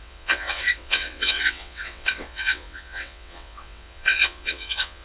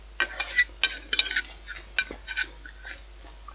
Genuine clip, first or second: second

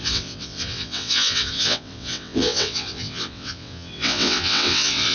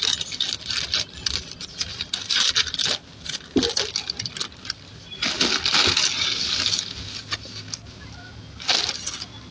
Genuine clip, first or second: second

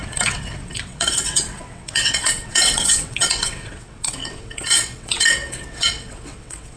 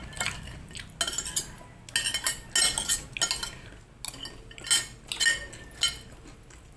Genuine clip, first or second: second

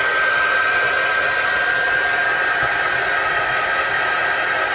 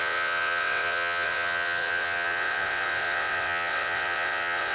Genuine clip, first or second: first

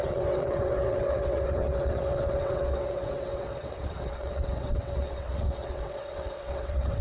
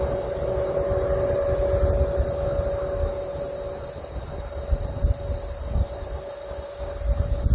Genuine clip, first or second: second